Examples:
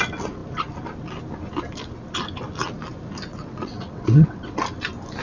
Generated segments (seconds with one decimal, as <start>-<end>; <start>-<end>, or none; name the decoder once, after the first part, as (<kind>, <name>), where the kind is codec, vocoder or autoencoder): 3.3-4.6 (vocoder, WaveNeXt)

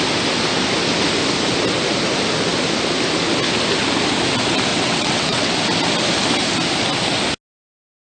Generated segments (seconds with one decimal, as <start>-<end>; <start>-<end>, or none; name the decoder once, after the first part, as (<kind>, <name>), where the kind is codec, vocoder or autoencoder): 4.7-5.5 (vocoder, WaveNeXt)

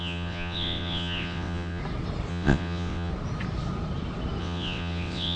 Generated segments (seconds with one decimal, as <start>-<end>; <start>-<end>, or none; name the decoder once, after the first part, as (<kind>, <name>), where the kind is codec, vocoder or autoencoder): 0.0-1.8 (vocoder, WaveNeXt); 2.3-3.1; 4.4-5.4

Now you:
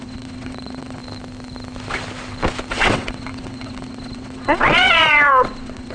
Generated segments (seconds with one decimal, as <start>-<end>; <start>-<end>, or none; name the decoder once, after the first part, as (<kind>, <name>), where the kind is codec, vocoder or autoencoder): 0.0-1.0 (vocoder, WaveNeXt); 2.7-5.9

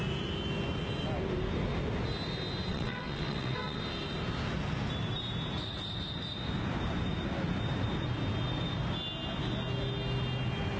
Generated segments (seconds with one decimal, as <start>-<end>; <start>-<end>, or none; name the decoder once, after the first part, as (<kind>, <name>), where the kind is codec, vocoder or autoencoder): 2.7-3.8 (vocoder, WaveNeXt)